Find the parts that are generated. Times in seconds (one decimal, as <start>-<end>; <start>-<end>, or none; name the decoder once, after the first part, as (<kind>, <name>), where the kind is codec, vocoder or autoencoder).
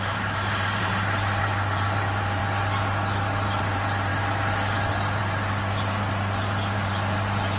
0.0-2.4 (vocoder, BigVGAN v2); 3.6-4.1; 5.2-7.6